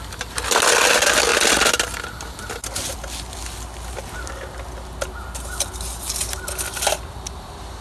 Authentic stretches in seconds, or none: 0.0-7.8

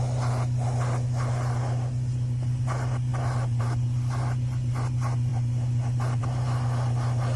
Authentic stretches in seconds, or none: 0.0-7.4

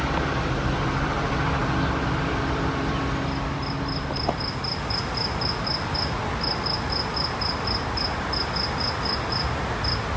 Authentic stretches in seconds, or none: 0.0-10.2

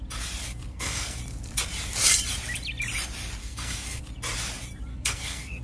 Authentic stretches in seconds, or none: 0.0-0.7; 1.2-3.4; 4.0-4.9

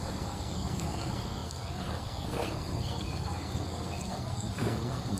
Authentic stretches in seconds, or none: none

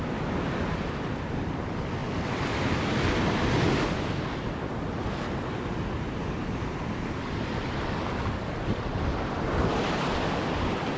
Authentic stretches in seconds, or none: 0.0-11.0

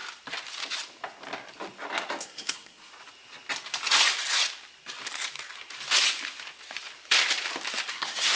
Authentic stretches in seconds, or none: 0.0-2.2; 2.9-7.9

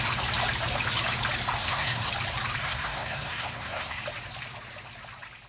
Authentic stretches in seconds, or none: 0.0-1.6; 2.1-2.6; 4.0-5.5